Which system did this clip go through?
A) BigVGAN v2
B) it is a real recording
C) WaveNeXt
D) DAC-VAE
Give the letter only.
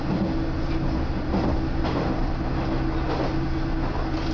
B